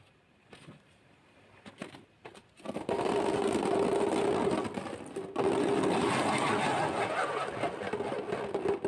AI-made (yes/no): no